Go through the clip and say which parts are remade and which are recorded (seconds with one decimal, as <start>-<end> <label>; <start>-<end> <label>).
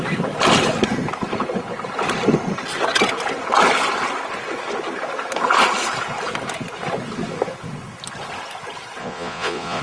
0.0-9.0 recorded; 9.0-9.8 remade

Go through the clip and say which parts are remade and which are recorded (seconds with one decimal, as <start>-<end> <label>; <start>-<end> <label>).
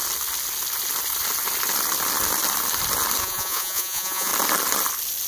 0.0-3.2 recorded; 3.2-4.3 remade; 4.3-5.3 recorded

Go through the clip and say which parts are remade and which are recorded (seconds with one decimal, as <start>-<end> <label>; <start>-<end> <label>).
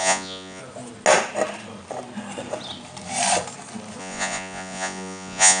0.0-0.6 remade; 0.6-4.0 recorded; 4.0-5.6 remade